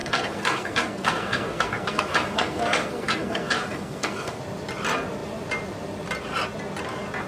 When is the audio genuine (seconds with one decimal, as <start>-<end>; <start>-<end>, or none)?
4.4-7.3